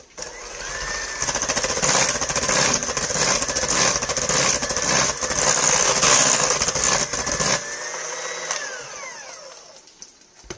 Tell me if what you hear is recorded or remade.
recorded